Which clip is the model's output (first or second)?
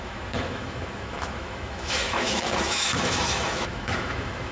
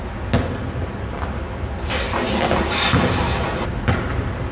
first